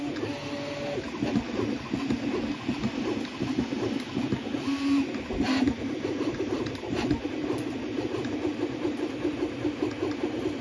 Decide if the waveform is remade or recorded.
recorded